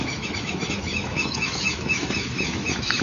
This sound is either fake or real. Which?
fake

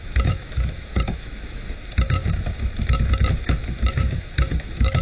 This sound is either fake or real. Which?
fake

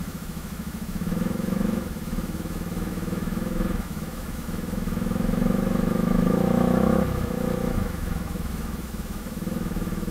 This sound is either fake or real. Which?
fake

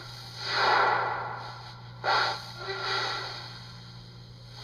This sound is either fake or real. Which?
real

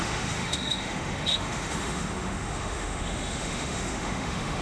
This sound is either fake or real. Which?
fake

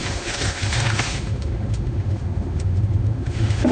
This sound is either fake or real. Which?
fake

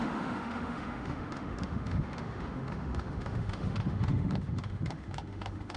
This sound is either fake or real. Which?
fake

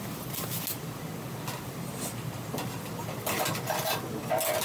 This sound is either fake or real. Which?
real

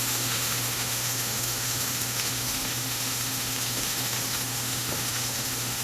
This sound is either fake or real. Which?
fake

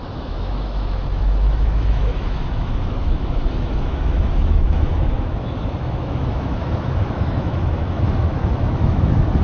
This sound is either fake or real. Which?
fake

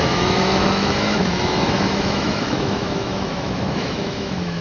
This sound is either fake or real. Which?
fake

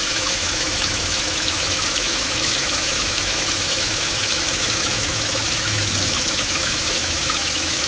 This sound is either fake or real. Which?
fake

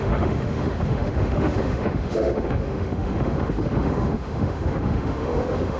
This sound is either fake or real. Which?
fake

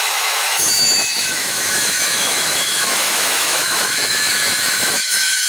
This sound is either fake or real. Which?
fake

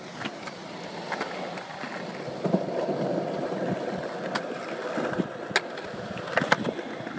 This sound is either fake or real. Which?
real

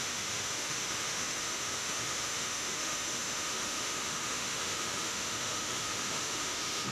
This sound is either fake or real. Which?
fake